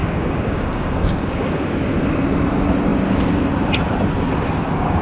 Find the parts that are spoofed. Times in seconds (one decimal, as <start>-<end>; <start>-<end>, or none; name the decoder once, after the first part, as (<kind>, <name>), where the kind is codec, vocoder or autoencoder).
0.0-1.7 (codec, DAC)